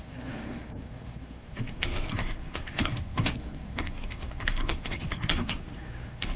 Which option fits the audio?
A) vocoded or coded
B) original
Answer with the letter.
A